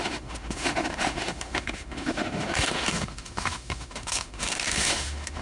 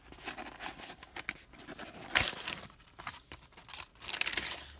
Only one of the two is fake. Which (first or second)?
first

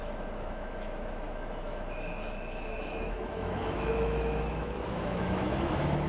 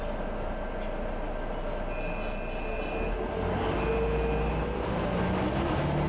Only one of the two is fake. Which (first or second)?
first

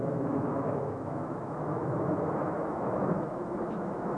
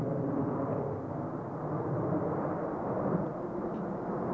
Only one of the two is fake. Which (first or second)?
first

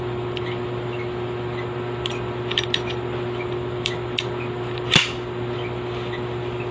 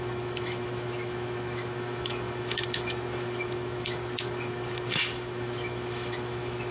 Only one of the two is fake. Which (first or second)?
second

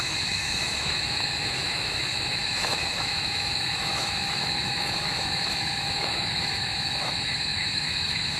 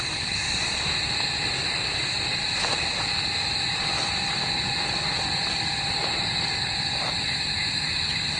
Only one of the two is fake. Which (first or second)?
first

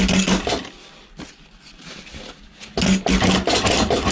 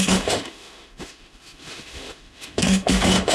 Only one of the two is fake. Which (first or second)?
second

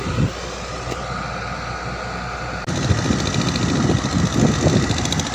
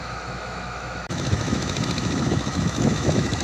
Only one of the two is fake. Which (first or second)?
second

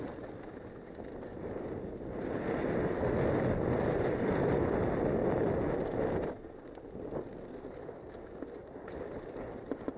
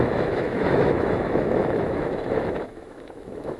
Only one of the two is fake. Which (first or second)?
second